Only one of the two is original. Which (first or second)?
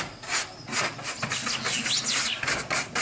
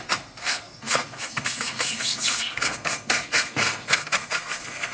first